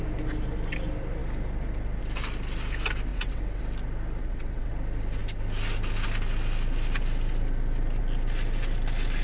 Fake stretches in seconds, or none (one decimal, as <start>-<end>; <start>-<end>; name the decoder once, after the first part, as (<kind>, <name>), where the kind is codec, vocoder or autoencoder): 3.1-3.6 (vocoder, WaveNeXt); 4.2-4.7